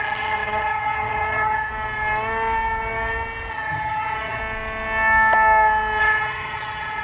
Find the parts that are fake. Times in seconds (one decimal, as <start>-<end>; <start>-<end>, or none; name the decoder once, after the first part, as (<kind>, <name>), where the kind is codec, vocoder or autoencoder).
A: 0.0-1.7 (vocoder, HiFi-GAN); 3.5-4.4; 6.0-7.0